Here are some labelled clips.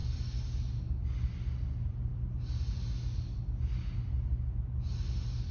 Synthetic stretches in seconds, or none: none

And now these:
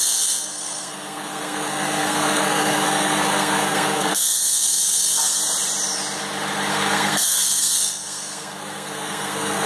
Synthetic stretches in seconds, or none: 0.0-5.4 (codec, SNAC); 6.7-9.7

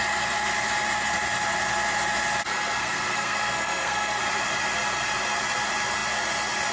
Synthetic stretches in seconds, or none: 2.8-4.2 (codec, SNAC)